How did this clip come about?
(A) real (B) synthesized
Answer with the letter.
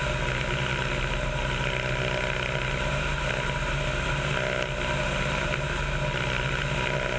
A